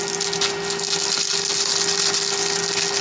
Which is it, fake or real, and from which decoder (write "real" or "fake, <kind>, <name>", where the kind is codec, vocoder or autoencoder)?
real